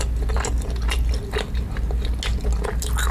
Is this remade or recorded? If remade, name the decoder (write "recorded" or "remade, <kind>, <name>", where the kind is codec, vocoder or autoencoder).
recorded